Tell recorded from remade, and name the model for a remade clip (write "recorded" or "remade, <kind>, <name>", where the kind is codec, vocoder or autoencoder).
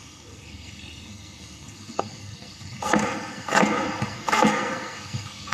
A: remade, codec, SNAC